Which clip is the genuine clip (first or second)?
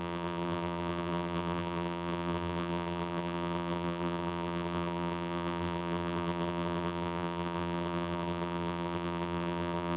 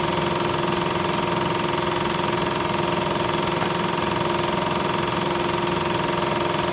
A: second